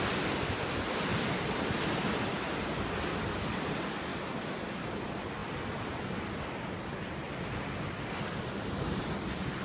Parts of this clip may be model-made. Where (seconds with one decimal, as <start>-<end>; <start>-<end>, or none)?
1.1-1.7; 4.1-5.0